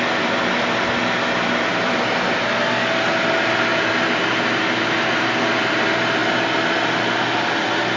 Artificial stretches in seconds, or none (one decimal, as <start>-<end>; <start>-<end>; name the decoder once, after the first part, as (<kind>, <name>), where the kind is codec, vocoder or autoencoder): 1.7-2.4 (vocoder, BigVGAN v2); 3.7-4.6